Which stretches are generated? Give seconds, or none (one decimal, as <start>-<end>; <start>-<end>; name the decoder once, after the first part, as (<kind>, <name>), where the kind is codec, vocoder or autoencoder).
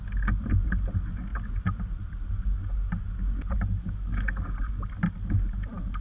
none